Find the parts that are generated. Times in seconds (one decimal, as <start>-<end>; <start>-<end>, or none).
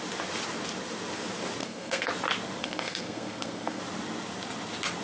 1.6-2.1; 2.6-3.8